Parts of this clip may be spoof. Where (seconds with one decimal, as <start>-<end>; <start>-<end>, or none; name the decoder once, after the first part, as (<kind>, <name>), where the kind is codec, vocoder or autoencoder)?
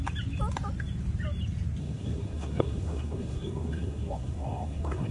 1.8-5.1 (codec, SNAC)